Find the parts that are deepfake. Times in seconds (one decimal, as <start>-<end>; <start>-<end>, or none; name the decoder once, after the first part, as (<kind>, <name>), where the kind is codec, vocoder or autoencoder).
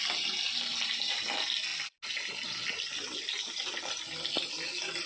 none